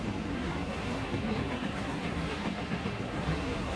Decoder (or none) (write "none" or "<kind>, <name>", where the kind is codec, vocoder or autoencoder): codec, SNAC